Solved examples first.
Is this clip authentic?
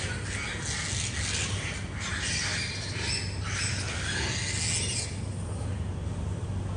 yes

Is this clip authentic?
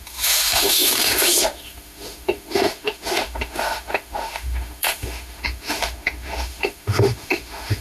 no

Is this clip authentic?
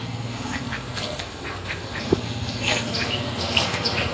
no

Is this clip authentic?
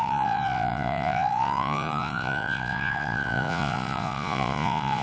no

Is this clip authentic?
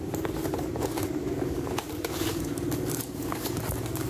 no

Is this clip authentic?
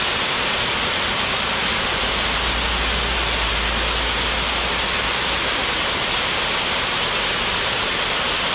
yes